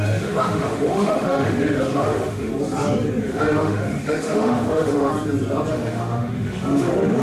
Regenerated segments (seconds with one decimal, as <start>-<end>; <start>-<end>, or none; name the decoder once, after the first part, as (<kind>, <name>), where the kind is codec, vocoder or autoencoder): 0.0-2.5 (autoencoder, DAC-VAE); 3.2-5.1; 5.7-7.2